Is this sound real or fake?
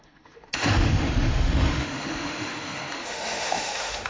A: fake